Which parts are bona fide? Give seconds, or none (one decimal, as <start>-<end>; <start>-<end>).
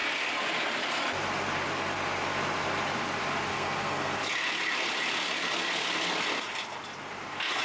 0.0-3.5; 4.2-7.6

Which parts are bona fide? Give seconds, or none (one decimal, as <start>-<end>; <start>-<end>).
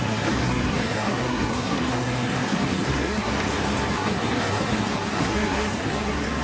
3.3-3.9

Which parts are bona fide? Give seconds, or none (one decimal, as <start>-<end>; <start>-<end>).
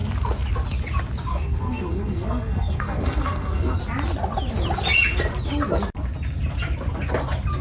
0.0-1.3; 3.8-7.6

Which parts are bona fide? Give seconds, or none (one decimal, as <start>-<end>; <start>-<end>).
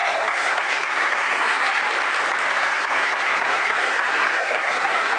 1.8-2.5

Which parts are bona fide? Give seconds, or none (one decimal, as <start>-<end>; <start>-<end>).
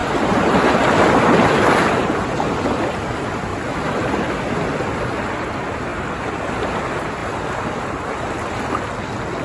0.0-9.4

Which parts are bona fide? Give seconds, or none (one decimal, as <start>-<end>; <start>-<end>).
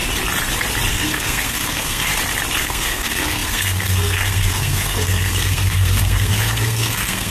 0.0-0.9; 2.1-2.6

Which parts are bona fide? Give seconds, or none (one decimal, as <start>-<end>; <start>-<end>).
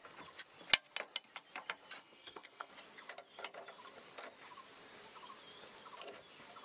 0.0-2.0; 2.7-6.6